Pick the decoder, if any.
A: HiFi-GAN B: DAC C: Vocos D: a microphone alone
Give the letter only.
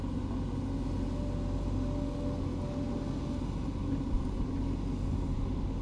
D